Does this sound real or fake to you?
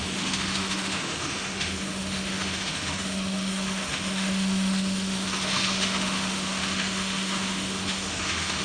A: fake